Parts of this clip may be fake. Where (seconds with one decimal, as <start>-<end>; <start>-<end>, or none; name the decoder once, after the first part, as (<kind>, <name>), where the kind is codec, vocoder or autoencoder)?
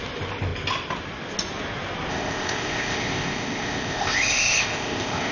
2.1-5.3 (codec, ZipCodec)